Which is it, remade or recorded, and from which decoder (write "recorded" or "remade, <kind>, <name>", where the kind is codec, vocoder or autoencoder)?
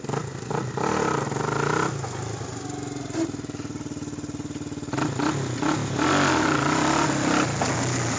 recorded